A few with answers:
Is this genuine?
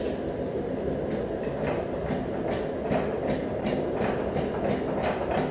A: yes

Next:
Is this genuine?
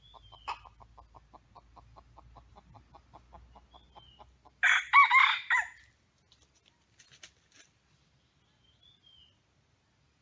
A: yes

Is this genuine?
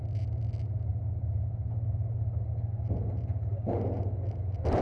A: yes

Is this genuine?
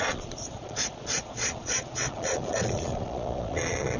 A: no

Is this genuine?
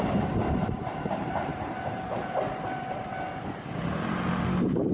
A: no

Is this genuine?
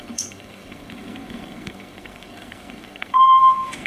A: no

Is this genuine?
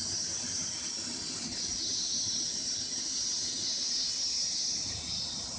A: yes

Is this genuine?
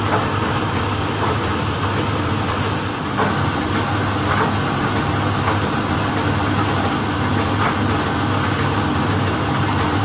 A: yes